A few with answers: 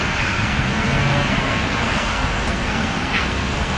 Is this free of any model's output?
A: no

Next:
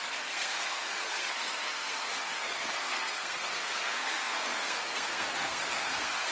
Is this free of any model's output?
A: no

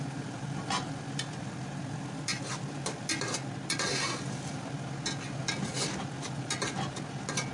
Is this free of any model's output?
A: yes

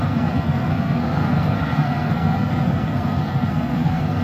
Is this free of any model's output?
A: no